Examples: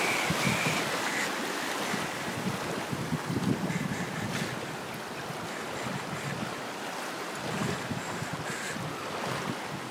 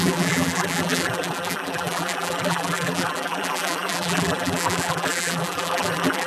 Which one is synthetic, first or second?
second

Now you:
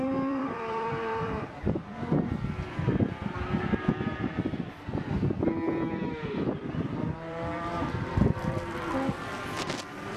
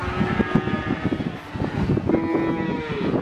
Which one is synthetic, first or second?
first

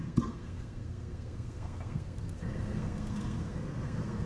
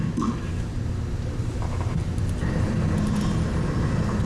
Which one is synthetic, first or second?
first